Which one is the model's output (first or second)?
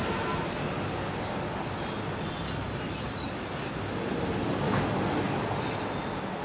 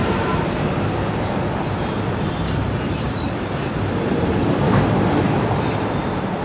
second